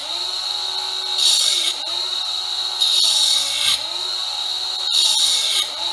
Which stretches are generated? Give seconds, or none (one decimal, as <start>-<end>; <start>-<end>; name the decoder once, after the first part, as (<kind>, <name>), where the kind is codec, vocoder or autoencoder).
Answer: none